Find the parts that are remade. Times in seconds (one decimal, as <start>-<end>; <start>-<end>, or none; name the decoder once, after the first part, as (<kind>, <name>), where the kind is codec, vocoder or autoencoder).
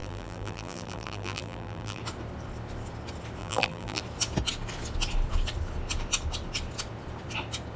0.0-2.0 (vocoder, BigVGAN v2); 3.4-4.0